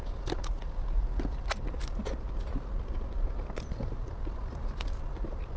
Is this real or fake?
real